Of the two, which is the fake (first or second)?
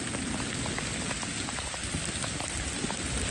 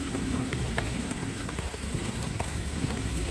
second